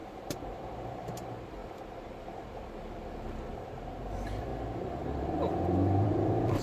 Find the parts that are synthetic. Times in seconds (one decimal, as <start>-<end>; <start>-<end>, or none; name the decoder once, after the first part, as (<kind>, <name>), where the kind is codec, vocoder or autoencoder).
0.0-1.6 (vocoder, BigVGAN v2); 3.5-4.5; 5.0-6.6